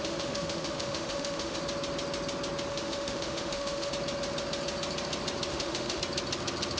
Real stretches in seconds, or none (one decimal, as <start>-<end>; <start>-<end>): 1.6-2.7; 3.9-5.5; 6.0-6.8